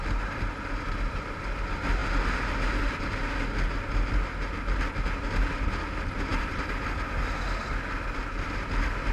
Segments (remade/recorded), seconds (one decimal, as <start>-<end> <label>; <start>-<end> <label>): 0.0-9.1 recorded